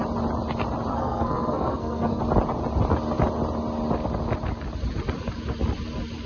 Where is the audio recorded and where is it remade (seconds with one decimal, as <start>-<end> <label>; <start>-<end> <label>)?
0.0-0.9 recorded; 0.9-2.2 remade; 2.2-6.3 recorded